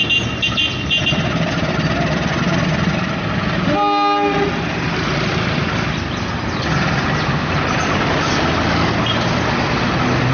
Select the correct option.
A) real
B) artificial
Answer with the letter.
A